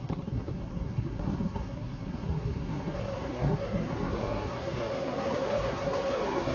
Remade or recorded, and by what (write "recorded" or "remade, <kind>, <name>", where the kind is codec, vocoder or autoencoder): remade, codec, SNAC